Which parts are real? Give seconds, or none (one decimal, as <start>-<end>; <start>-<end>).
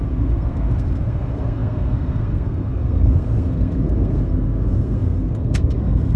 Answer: none